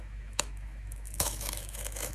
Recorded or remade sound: remade